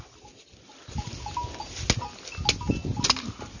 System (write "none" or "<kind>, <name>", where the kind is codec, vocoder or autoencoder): none